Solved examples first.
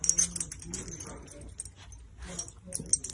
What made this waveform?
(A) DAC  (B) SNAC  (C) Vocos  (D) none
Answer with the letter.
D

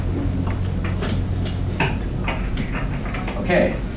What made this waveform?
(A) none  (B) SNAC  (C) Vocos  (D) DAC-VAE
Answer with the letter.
A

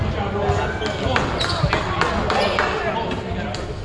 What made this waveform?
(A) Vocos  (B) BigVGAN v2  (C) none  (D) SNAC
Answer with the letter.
C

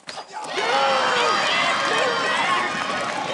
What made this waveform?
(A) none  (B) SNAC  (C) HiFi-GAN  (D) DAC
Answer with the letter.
A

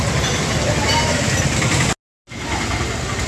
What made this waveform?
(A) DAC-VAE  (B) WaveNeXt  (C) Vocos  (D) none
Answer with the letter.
D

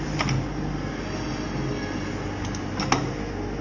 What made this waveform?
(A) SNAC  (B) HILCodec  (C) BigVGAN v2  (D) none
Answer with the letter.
D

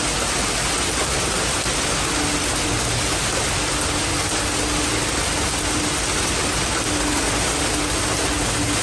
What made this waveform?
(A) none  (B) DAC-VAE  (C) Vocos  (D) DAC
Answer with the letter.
A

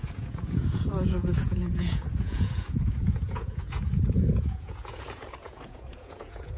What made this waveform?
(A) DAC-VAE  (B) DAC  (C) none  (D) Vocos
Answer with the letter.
D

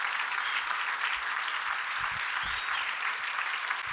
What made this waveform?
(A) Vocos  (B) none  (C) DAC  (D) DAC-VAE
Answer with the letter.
B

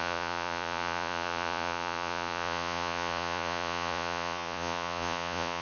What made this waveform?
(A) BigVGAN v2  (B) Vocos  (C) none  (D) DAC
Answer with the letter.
B